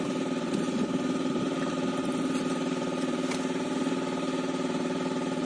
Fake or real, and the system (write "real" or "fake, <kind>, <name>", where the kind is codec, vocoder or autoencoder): fake, vocoder, BigVGAN v2